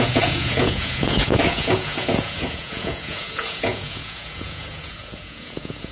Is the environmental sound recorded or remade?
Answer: remade